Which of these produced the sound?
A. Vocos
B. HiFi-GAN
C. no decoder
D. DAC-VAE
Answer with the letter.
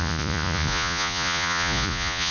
A